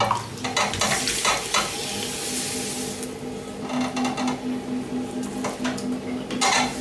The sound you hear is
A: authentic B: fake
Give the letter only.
A